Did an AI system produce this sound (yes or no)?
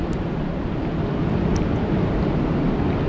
no